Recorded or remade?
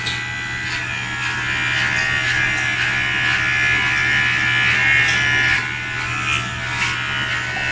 recorded